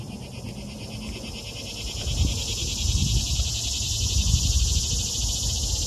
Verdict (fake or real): real